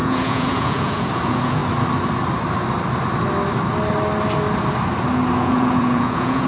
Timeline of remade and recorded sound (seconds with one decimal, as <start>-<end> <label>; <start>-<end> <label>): 0.0-1.6 remade; 1.6-5.4 recorded; 5.4-6.5 remade